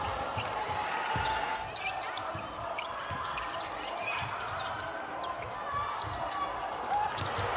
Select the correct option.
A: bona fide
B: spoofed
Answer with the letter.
A